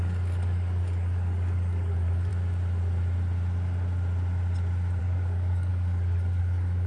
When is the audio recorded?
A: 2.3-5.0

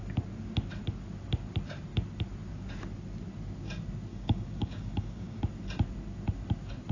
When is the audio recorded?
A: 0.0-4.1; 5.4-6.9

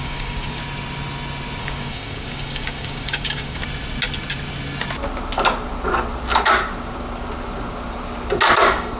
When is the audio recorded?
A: 0.6-1.6; 3.6-8.6